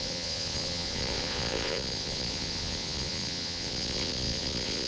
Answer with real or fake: fake